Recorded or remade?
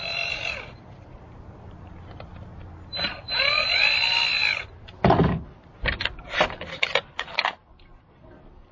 remade